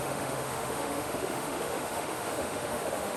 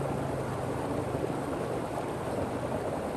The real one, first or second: second